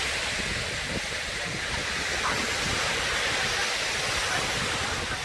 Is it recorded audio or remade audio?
recorded